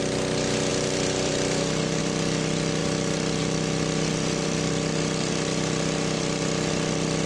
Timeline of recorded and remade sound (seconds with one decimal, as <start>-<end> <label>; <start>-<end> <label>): 0.0-0.7 recorded; 0.7-2.0 remade; 2.0-7.3 recorded

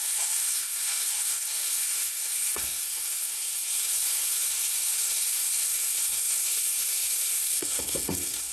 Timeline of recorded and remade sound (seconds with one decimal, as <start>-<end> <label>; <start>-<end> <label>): 0.0-8.5 remade

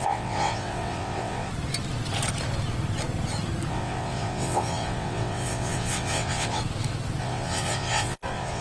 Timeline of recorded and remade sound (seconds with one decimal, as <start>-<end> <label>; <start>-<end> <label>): 0.0-1.5 remade; 1.5-3.7 recorded; 3.7-6.6 remade; 6.6-7.2 recorded; 7.2-8.6 remade

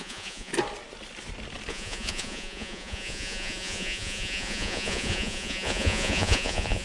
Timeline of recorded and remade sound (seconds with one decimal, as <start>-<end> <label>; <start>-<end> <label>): 0.0-0.5 remade; 0.5-1.7 recorded; 1.7-6.8 remade

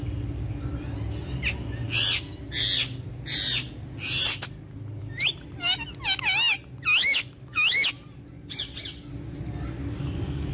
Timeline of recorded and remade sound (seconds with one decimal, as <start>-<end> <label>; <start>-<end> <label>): 0.0-7.0 recorded; 7.0-7.9 remade; 7.9-9.8 recorded; 9.8-10.5 remade

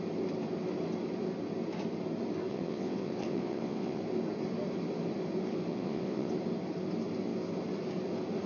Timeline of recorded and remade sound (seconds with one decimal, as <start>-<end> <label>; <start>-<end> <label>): 0.0-2.5 recorded; 2.5-4.0 remade; 4.0-5.7 recorded; 5.7-6.3 remade; 6.3-8.5 recorded

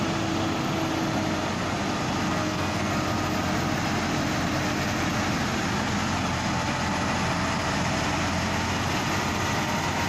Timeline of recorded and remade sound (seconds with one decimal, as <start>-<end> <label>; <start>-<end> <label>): 0.0-2.3 recorded; 2.3-2.9 remade; 2.9-10.1 recorded

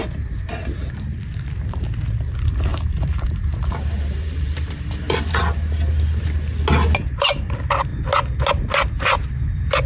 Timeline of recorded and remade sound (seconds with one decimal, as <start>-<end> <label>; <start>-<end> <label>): 0.0-2.7 recorded; 2.7-5.4 remade; 5.4-9.9 recorded